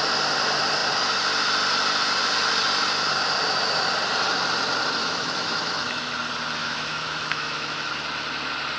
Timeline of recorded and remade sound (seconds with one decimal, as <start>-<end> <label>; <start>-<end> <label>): 0.0-5.0 recorded; 5.0-6.1 remade; 6.1-6.6 recorded; 6.6-7.9 remade; 7.9-8.8 recorded